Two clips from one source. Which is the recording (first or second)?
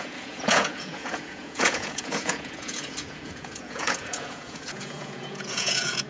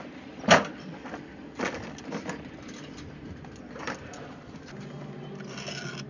second